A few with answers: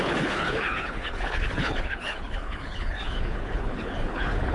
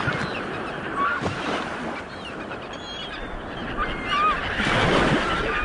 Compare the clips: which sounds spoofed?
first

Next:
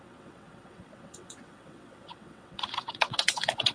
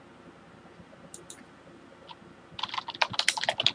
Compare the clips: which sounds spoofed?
first